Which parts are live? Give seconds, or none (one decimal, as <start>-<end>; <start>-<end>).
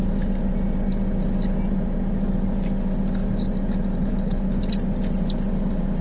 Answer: 0.0-4.0; 4.6-6.0